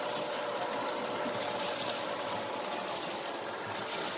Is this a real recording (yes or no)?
yes